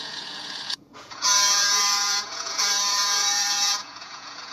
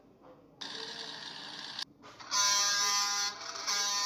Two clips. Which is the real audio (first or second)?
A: second